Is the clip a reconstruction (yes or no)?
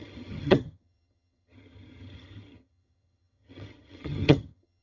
yes